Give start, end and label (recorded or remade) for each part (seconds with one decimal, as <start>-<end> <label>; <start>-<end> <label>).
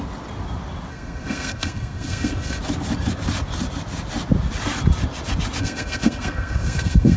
0.0-0.9 recorded; 0.9-2.6 remade; 2.6-5.6 recorded; 5.6-7.2 remade